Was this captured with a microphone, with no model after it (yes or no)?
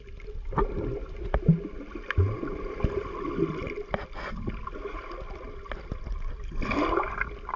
yes